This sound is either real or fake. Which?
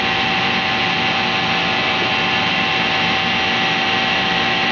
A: real